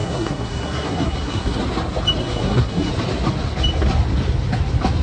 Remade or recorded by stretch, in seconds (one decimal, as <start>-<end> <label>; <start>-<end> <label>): 0.0-1.6 remade; 1.6-2.2 recorded; 2.2-2.9 remade; 2.9-5.0 recorded